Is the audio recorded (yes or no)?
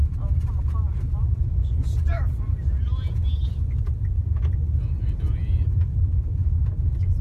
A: yes